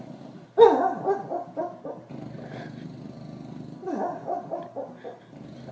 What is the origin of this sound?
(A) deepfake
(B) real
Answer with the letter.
B